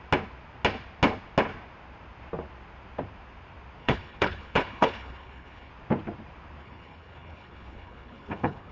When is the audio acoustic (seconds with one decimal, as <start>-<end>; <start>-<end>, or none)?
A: 0.0-3.8; 5.7-6.6